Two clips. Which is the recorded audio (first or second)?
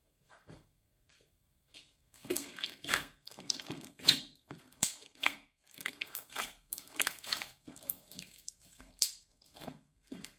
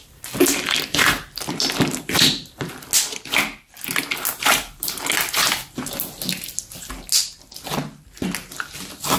second